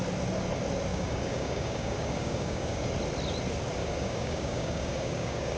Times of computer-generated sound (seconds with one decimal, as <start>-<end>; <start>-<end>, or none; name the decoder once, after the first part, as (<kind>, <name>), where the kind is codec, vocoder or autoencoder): 0.9-2.9 (codec, DAC); 3.8-5.6

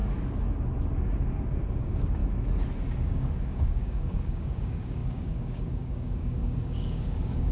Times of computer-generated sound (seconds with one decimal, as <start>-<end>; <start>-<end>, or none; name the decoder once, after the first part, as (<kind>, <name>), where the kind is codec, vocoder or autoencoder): 1.7-2.2 (codec, DAC); 3.1-7.5

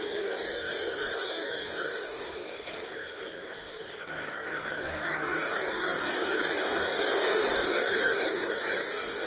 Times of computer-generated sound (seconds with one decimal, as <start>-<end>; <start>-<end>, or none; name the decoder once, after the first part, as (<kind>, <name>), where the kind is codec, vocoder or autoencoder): 0.0-9.3 (codec, DAC)

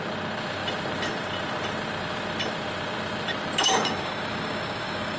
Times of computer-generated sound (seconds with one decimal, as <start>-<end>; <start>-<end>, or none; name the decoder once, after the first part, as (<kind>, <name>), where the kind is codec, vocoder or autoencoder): 3.6-5.2 (codec, DAC)

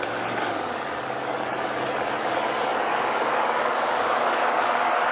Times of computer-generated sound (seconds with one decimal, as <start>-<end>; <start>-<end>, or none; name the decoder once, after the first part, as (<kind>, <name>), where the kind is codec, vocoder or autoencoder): 0.0-5.1 (codec, DAC)

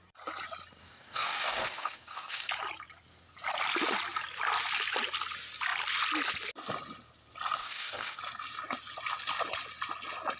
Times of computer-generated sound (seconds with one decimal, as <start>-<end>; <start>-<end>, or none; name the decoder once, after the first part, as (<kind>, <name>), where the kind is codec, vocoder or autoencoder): 0.8-2.5 (codec, DAC); 7.6-8.2

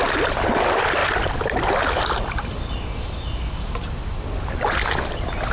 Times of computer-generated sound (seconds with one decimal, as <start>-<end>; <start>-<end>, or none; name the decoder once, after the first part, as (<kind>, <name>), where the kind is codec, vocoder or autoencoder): none